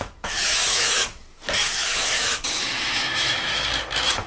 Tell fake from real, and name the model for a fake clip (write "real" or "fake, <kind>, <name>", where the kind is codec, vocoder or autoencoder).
fake, autoencoder, DAC-VAE